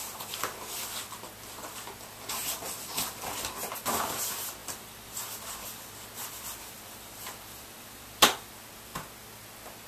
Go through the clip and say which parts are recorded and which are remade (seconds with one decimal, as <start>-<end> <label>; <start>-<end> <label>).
0.0-4.6 recorded; 4.6-8.5 remade; 8.5-9.9 recorded